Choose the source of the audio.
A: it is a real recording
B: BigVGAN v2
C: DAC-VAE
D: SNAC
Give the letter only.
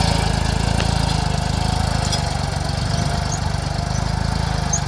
A